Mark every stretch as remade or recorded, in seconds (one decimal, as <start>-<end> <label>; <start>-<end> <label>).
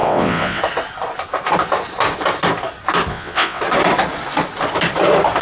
0.0-0.6 remade; 0.6-3.1 recorded; 3.1-3.6 remade; 3.6-5.4 recorded